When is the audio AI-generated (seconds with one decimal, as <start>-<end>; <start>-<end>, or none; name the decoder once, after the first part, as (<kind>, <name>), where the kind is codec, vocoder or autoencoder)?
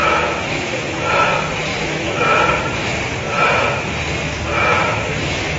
0.0-1.1 (autoencoder, DAC-VAE); 1.7-3.0; 4.5-5.6